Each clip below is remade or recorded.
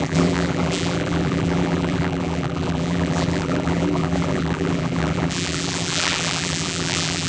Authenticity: remade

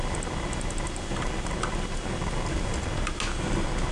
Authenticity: recorded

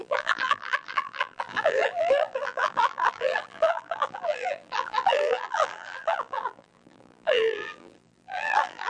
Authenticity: remade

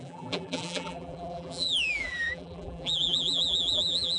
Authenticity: remade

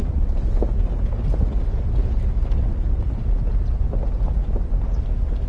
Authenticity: recorded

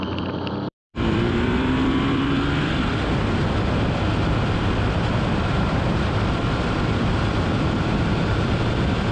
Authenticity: remade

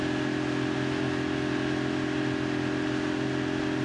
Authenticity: recorded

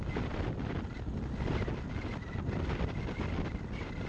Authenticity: recorded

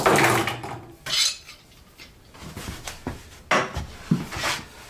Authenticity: recorded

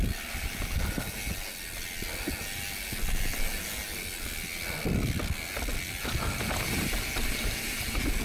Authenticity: recorded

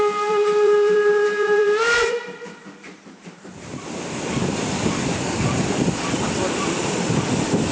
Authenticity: remade